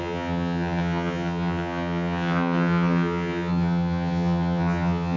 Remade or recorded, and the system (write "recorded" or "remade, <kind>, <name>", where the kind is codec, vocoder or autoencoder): remade, vocoder, HiFi-GAN